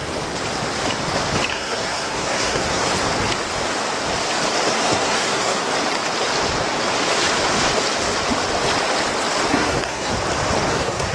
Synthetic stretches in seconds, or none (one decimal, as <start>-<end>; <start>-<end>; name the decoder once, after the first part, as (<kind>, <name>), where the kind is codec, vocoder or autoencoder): 1.5-2.9 (codec, SNAC); 4.7-5.7; 9.5-10.1; 10.7-11.1